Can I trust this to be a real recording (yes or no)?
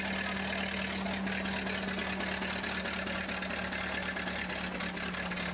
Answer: yes